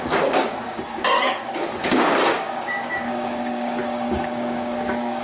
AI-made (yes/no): yes